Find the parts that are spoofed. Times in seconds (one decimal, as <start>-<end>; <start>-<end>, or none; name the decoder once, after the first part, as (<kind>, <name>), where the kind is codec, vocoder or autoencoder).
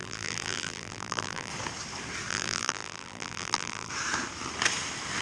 0.0-1.5 (vocoder, BigVGAN v2); 2.3-3.9